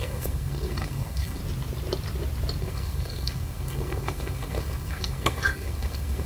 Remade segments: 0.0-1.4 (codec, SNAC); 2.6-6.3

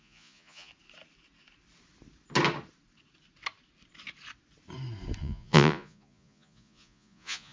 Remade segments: 0.0-0.7 (vocoder, Vocos); 5.2-7.5

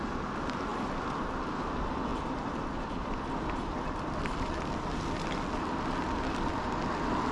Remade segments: none

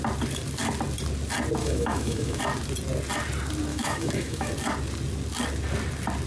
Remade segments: 1.6-2.4 (autoencoder, DAC-VAE); 3.7-4.5

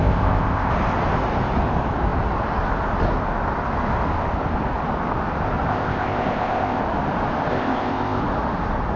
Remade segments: 0.0-0.7 (codec, ZipCodec); 5.7-6.8; 7.5-8.2

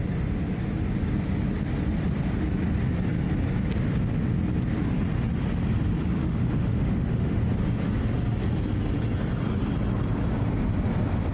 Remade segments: 6.2-7.4 (autoencoder, DAC-VAE)